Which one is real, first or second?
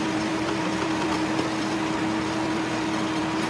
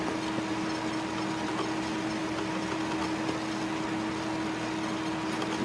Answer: second